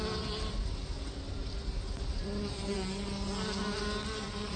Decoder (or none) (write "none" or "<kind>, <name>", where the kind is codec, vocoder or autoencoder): none